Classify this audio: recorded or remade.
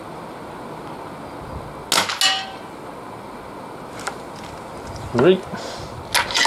recorded